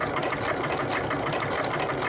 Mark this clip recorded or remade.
recorded